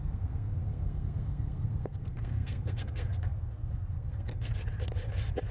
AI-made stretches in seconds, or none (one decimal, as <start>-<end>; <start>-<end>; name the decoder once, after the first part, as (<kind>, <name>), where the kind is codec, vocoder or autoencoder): 0.0-4.5 (codec, SNAC)